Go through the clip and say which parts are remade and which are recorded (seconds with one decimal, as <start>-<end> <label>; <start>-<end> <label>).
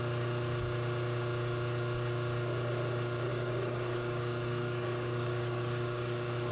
0.0-3.3 recorded; 3.3-6.5 remade